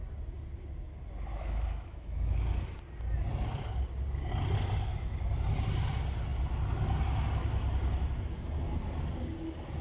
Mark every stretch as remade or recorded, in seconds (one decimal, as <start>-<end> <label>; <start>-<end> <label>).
0.0-1.3 recorded; 1.3-2.4 remade; 2.4-9.8 recorded